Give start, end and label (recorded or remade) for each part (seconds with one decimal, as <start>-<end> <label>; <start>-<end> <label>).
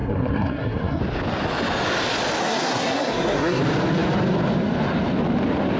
0.0-1.0 remade; 1.0-2.4 recorded; 2.4-3.6 remade; 3.6-5.8 recorded